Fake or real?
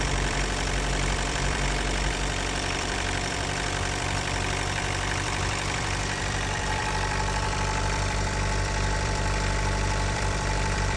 fake